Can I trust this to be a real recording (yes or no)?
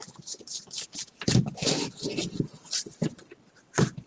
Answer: yes